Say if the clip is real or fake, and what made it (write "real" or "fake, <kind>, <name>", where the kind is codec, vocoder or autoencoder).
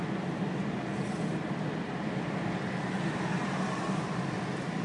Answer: real